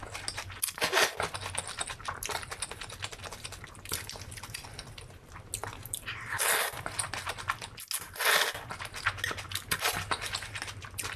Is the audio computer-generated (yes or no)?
no